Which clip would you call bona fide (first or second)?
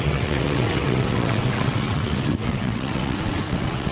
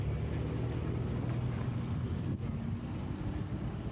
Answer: second